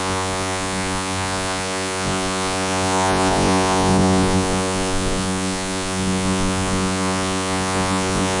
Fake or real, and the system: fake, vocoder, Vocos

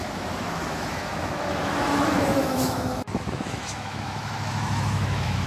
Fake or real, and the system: fake, autoencoder, DAC-VAE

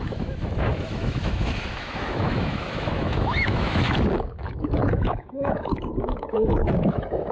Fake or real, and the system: fake, autoencoder, DAC-VAE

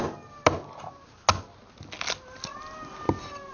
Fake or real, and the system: real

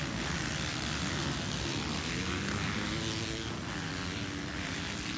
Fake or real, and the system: real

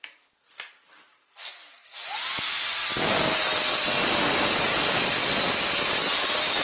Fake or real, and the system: real